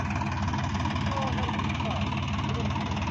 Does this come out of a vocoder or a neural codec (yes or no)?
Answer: no